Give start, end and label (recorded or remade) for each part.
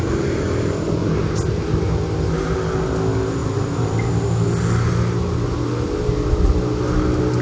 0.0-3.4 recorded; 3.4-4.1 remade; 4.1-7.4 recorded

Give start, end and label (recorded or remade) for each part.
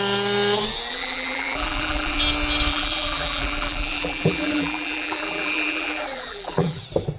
0.0-0.9 recorded; 0.9-2.2 remade; 2.2-2.7 recorded; 2.7-6.8 remade; 6.8-7.2 recorded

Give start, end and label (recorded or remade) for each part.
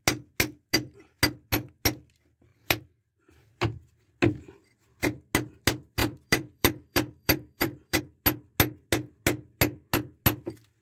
0.0-2.5 recorded; 2.5-3.5 remade; 3.5-6.0 recorded; 6.0-8.0 remade; 8.0-10.8 recorded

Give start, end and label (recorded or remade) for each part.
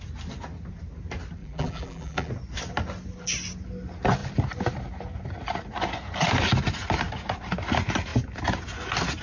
0.0-1.4 recorded; 1.4-2.3 remade; 2.3-9.2 recorded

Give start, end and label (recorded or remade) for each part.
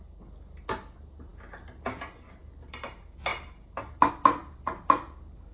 0.0-3.3 recorded; 3.3-4.1 remade; 4.1-5.5 recorded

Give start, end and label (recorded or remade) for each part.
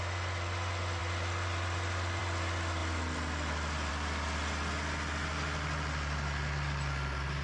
0.0-7.4 recorded